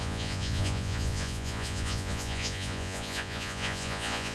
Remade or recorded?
remade